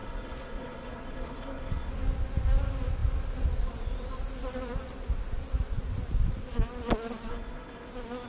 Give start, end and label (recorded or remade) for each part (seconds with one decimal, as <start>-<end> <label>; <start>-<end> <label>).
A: 0.0-1.9 remade; 1.9-7.3 recorded; 7.3-7.9 remade; 7.9-8.3 recorded